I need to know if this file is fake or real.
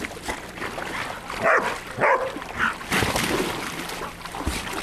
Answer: real